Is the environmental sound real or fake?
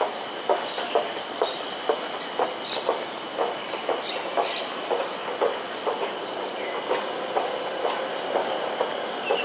real